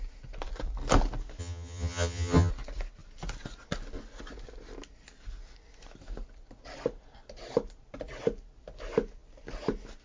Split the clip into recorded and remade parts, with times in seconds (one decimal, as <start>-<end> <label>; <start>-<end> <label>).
0.0-1.4 recorded; 1.4-2.5 remade; 2.5-10.0 recorded